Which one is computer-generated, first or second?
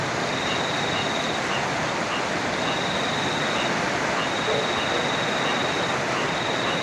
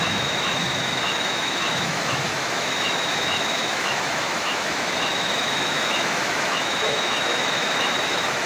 second